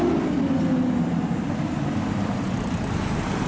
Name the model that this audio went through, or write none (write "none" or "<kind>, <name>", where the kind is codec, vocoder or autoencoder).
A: none